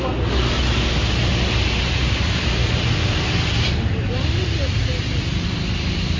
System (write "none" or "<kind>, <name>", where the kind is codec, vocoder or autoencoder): none